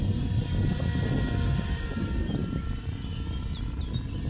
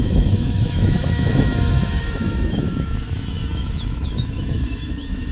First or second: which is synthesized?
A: second